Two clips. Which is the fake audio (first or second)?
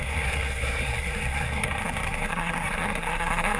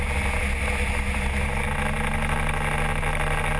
first